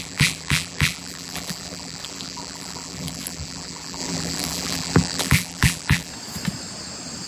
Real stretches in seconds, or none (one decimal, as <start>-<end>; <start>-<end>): 6.1-7.3

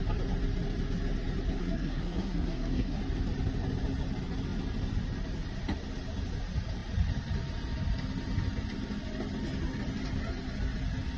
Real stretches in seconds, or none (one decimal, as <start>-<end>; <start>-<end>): 0.0-1.6; 3.0-11.2

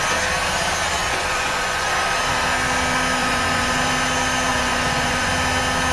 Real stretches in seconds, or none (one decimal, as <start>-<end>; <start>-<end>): 0.0-1.0; 1.9-3.2; 3.8-4.5; 5.3-5.9

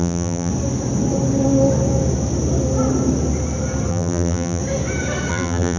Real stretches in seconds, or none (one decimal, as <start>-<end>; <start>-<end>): 0.5-3.9; 4.6-5.3

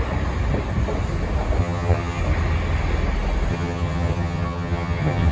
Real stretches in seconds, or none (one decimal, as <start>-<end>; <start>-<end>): 0.0-1.6; 2.2-3.5

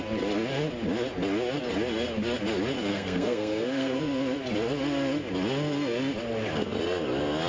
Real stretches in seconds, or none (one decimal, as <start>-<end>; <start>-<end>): 0.0-2.9; 4.0-7.5